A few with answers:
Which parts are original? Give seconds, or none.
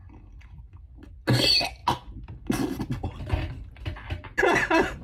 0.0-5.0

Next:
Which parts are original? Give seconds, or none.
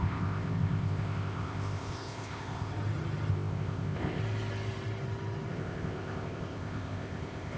2.7-3.3; 4.2-5.5